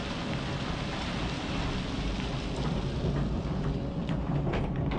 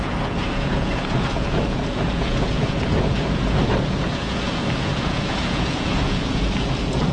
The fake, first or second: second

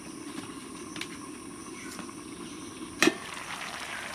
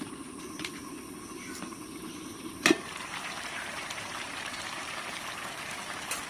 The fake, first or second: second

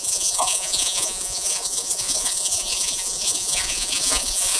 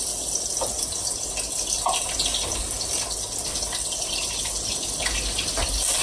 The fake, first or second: first